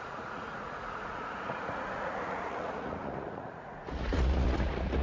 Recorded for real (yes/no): no